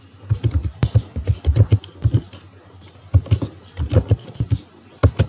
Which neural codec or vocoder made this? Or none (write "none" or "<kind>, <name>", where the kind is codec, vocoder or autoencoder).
none